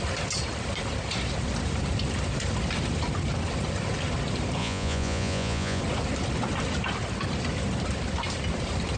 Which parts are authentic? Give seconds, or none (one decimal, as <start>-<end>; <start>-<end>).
0.0-4.6; 5.8-9.0